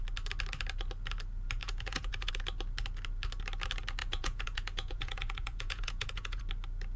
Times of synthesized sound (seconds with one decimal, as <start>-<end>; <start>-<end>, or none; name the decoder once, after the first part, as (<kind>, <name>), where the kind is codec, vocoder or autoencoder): 1.6-2.3 (vocoder, Vocos); 4.0-6.4